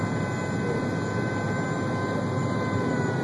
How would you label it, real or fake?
real